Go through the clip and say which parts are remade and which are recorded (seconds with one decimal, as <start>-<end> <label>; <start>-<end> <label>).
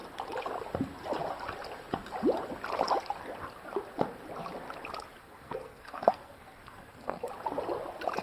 0.0-5.2 recorded; 5.2-7.3 remade; 7.3-8.2 recorded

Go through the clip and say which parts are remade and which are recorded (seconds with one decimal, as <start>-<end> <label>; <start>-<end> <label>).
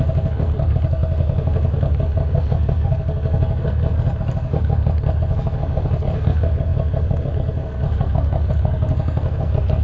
0.0-9.8 remade